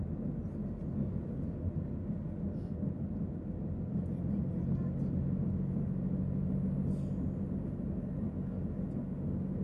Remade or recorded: recorded